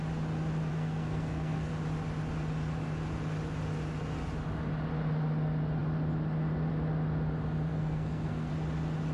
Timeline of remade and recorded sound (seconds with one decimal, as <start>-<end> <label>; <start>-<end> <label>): 0.0-0.7 recorded; 0.7-1.7 remade; 1.7-7.7 recorded; 7.7-8.5 remade; 8.5-9.1 recorded